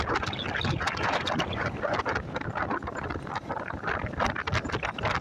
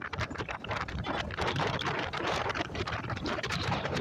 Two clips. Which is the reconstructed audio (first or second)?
second